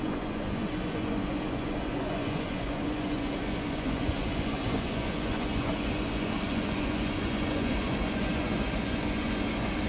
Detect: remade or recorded remade